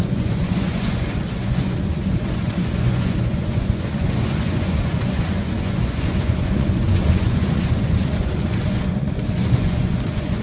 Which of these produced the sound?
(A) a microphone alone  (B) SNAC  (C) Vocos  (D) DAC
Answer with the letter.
C